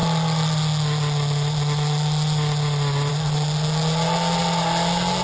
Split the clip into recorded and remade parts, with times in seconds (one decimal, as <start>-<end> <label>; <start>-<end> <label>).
0.0-5.2 recorded